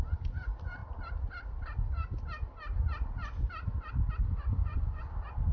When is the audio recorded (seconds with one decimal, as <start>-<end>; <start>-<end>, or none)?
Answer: 0.0-4.5; 5.0-5.5